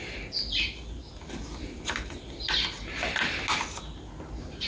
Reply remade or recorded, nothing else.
recorded